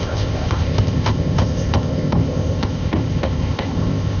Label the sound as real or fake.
fake